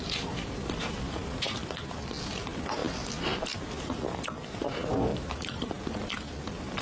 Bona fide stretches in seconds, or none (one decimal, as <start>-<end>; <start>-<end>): 0.0-5.1; 5.9-6.8